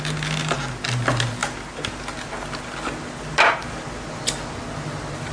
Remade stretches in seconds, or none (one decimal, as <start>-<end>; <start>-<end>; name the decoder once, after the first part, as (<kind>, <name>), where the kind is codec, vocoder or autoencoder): none